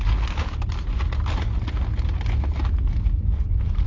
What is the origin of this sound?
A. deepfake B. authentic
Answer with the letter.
B